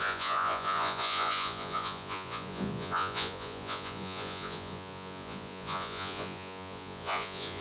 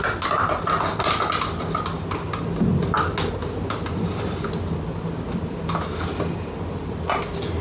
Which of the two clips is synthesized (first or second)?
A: first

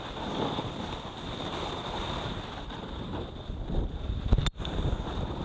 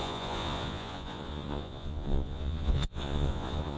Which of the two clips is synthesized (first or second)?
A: second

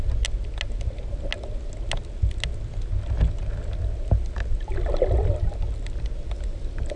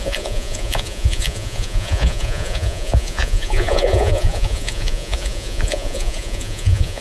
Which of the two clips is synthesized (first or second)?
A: second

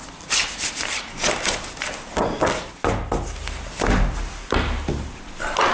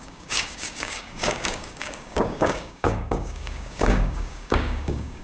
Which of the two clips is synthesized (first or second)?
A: second